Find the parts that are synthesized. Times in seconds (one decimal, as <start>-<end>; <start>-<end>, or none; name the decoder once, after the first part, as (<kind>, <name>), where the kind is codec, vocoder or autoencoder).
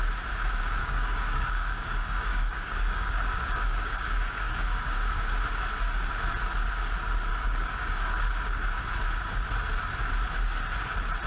0.8-5.2 (codec, DAC); 7.3-8.8